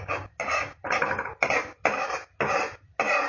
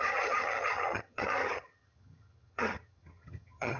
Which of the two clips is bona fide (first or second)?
first